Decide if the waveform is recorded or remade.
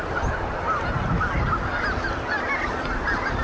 recorded